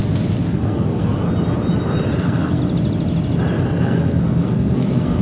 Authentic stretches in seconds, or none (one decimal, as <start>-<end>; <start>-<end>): 0.0-0.5; 1.2-2.2; 2.6-3.6